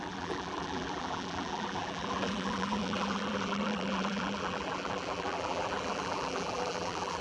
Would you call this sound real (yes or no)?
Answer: no